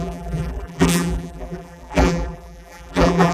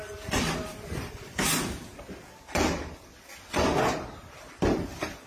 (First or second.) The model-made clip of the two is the first